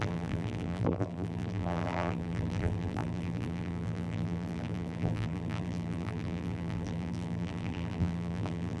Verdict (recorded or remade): remade